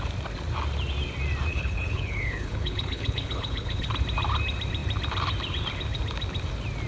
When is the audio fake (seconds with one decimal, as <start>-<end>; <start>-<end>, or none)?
1.5-3.9